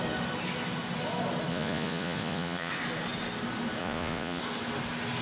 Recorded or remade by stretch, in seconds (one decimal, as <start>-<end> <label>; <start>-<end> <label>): 0.0-1.5 recorded; 1.5-2.7 remade; 2.7-3.8 recorded; 3.8-4.4 remade; 4.4-5.2 recorded